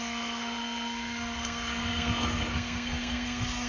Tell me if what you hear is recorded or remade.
remade